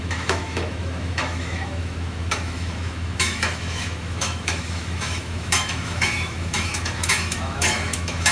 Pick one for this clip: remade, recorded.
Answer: remade